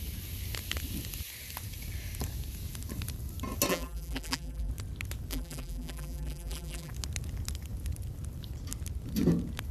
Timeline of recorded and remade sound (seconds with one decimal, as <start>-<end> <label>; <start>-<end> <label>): 0.0-3.7 recorded; 3.7-4.7 remade; 4.7-5.3 recorded; 5.3-6.9 remade; 6.9-9.7 recorded